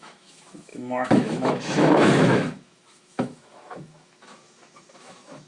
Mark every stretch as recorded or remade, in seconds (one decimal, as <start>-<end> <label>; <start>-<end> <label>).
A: 0.0-5.5 remade